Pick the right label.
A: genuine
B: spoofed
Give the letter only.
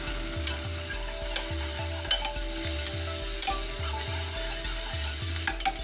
A